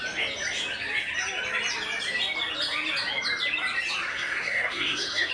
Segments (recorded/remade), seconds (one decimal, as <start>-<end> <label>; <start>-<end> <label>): 0.0-4.1 recorded; 4.1-5.3 remade